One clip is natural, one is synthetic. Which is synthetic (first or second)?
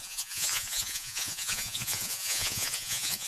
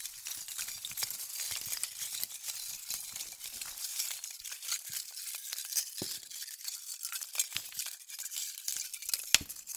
first